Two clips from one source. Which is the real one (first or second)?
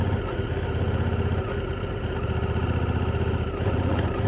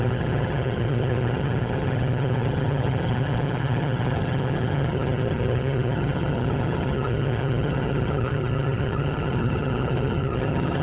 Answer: first